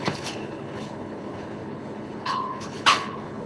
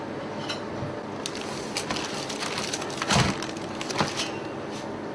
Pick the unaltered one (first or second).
second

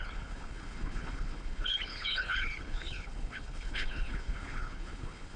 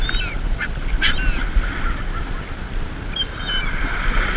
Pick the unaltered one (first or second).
second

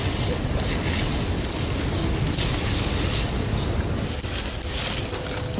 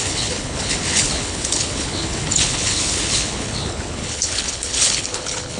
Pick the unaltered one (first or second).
first